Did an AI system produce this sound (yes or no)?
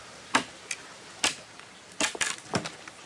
no